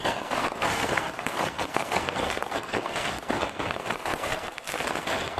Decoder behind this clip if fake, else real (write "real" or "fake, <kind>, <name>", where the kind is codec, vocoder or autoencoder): fake, codec, SNAC